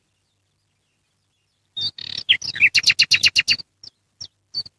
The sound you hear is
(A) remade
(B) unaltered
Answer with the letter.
B